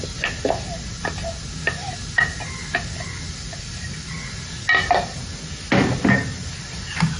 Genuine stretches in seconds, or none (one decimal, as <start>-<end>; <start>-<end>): 0.0-7.2